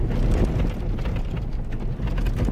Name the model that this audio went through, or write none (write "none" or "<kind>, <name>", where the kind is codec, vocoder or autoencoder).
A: none